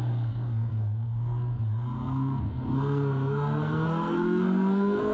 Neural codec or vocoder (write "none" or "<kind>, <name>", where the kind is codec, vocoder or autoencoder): codec, SNAC